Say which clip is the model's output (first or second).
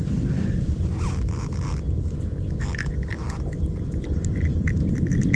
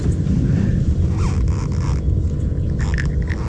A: first